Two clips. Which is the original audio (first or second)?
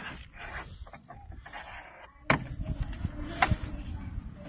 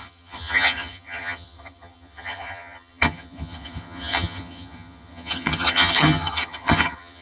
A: first